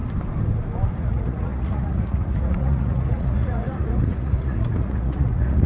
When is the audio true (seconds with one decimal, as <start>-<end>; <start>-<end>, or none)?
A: 0.0-0.9